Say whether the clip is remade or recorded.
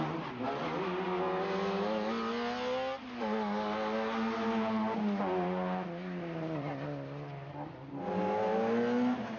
recorded